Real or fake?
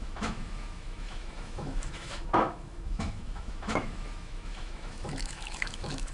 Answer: fake